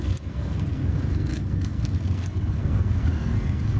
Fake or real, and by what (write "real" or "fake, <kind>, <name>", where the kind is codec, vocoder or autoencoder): fake, codec, SNAC